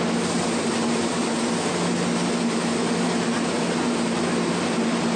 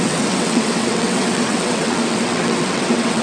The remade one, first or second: second